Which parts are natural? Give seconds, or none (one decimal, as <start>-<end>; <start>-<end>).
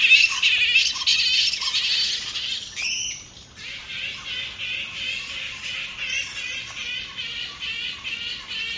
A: 0.0-8.8